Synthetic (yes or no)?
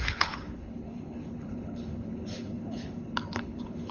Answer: yes